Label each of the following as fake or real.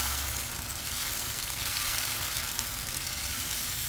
fake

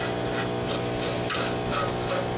real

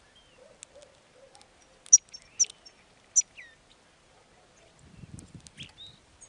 real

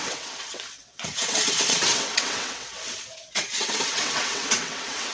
fake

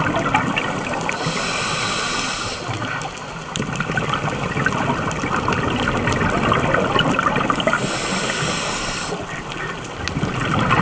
real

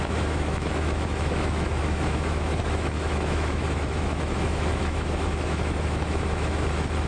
fake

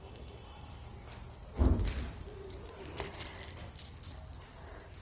real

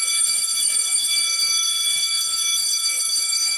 fake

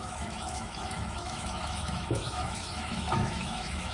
fake